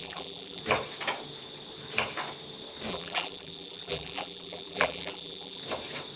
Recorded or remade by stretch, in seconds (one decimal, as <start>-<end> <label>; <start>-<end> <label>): 0.0-0.6 remade; 0.6-2.9 recorded; 2.9-5.6 remade; 5.6-6.2 recorded